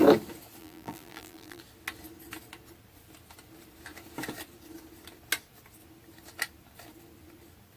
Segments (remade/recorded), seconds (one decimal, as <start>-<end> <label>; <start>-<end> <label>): 0.0-0.6 recorded; 0.6-1.6 remade; 1.6-7.8 recorded